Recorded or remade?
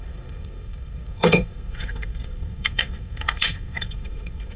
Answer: remade